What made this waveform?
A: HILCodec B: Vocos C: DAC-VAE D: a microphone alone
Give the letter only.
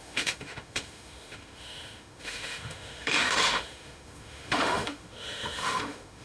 C